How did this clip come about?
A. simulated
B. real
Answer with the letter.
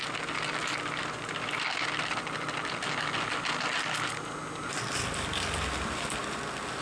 B